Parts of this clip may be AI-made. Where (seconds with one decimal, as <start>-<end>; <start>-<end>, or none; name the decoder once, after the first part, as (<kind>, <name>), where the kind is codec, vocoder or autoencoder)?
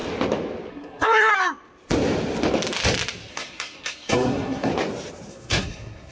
0.7-1.3 (codec, SNAC); 3.3-4.7; 5.3-6.1